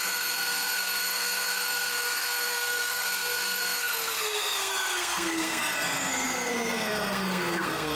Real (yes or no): no